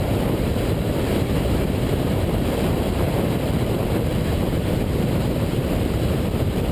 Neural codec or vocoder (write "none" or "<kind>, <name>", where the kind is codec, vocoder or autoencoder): vocoder, BigVGAN v2